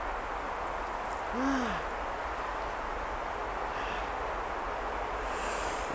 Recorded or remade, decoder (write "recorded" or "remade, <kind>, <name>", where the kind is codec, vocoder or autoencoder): recorded